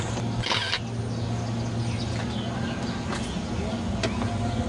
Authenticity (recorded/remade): recorded